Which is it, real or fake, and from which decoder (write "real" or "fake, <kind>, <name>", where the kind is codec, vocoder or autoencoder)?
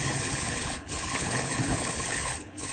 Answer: fake, codec, HILCodec